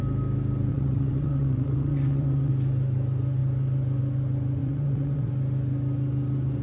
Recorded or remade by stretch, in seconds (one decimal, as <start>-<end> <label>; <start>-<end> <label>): 0.0-0.7 recorded; 0.7-2.5 remade; 2.5-4.6 recorded; 4.6-5.3 remade; 5.3-6.6 recorded